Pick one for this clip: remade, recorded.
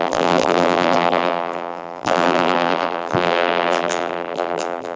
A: remade